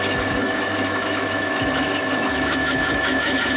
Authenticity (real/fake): fake